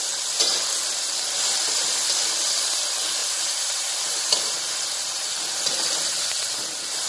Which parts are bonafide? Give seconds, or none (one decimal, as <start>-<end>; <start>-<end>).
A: 0.0-7.1